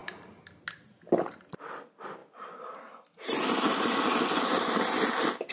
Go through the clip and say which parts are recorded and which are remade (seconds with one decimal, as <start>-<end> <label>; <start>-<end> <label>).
0.0-5.5 recorded